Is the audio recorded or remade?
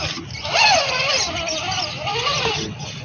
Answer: recorded